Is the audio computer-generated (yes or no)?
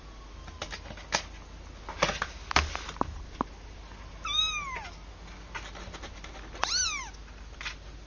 no